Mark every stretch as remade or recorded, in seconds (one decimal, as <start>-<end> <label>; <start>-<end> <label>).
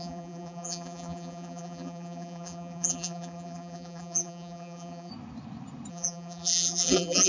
0.0-5.1 remade; 5.1-5.9 recorded; 5.9-7.3 remade